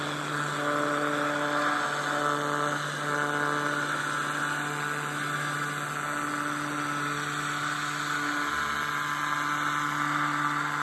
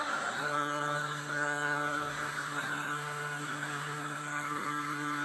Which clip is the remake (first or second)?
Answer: second